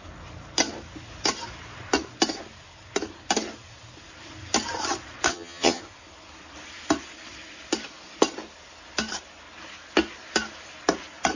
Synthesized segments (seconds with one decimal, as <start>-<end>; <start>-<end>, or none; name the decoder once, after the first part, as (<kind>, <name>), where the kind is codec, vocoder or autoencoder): 5.3-5.8 (vocoder, HiFi-GAN)